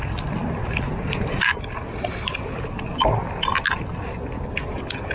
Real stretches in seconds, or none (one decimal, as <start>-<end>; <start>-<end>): 0.0-5.1